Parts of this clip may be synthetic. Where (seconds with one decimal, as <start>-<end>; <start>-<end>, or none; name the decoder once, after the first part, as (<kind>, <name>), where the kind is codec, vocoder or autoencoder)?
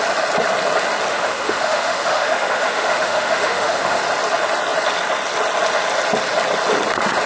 1.1-4.0 (autoencoder, DAC-VAE)